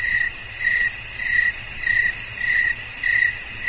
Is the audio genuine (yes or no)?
yes